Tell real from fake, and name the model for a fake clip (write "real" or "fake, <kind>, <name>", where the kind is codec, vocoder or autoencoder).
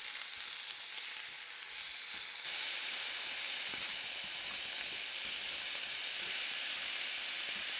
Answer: real